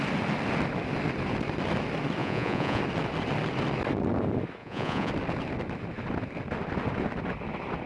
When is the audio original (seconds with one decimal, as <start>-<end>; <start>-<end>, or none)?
0.0-2.2; 2.8-4.6; 5.1-7.9